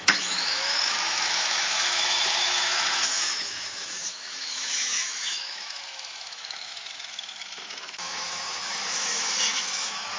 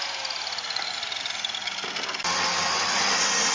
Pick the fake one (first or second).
first